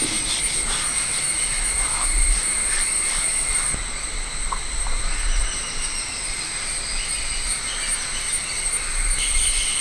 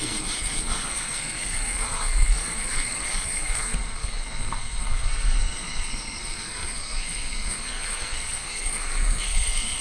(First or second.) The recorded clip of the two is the first